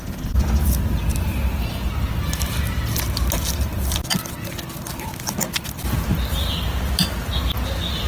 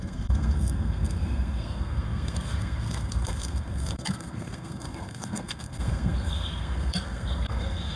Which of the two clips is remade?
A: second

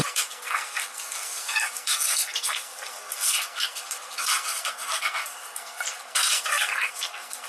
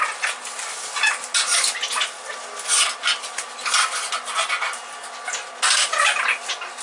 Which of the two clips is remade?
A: first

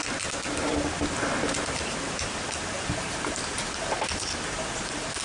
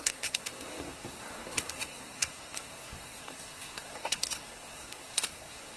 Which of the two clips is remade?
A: second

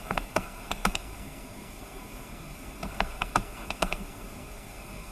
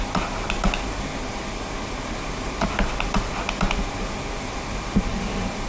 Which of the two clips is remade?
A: first